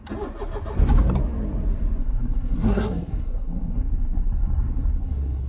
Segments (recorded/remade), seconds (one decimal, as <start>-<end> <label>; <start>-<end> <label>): 0.0-2.0 recorded; 2.0-5.5 remade